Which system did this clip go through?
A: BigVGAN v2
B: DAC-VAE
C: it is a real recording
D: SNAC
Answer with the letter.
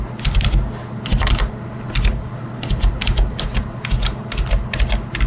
C